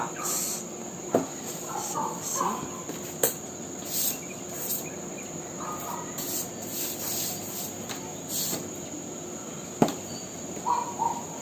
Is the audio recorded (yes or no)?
yes